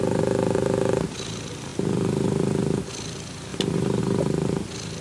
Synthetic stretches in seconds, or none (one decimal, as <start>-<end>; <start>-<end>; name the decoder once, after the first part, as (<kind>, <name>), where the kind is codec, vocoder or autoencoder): none